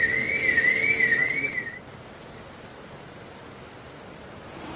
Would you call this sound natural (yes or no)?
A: yes